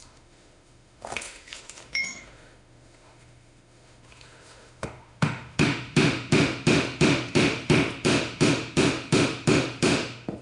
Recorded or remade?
remade